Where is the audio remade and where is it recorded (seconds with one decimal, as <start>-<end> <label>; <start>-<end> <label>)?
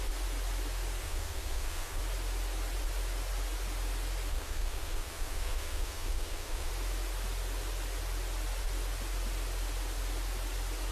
0.0-1.0 recorded; 1.0-2.0 remade; 2.0-4.3 recorded; 4.3-6.7 remade; 6.7-10.9 recorded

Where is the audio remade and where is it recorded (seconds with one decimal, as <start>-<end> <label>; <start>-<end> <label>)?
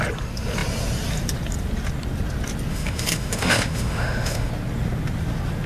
0.0-2.7 recorded; 2.7-4.5 remade; 4.5-5.7 recorded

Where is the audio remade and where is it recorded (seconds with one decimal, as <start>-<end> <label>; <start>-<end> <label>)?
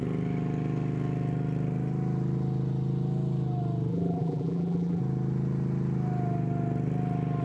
0.0-3.9 recorded; 3.9-5.0 remade; 5.0-7.4 recorded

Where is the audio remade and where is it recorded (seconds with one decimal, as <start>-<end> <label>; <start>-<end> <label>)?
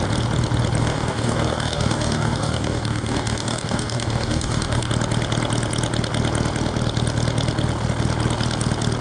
0.0-0.8 recorded; 0.8-4.9 remade; 4.9-9.0 recorded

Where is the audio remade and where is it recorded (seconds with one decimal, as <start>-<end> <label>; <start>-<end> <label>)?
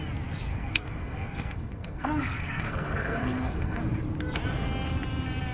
0.0-0.5 recorded; 0.5-3.8 remade; 3.8-5.5 recorded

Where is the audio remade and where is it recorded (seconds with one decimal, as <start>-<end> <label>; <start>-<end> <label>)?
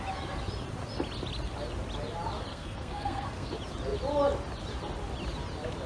0.0-2.5 recorded; 2.5-3.5 remade; 3.5-5.9 recorded